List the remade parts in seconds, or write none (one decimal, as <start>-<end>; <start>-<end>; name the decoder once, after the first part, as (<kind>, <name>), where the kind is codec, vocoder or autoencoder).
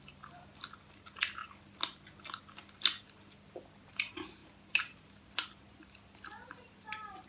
0.0-1.4 (vocoder, BigVGAN v2); 2.5-7.3